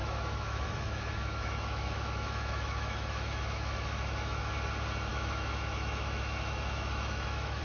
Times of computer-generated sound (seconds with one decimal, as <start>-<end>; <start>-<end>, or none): 0.0-4.5; 5.1-7.6